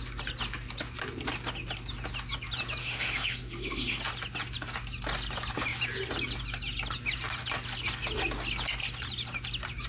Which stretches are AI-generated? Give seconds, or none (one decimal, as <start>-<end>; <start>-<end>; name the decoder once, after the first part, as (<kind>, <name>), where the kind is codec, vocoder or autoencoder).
2.8-4.0 (autoencoder, DAC-VAE)